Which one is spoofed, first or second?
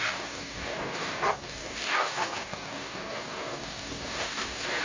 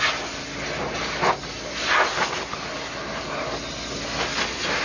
first